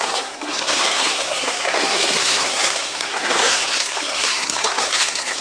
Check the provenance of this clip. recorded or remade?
remade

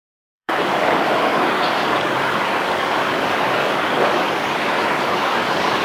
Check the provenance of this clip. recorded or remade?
remade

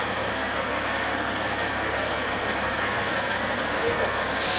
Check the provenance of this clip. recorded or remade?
remade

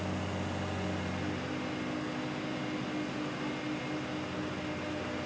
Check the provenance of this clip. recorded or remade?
recorded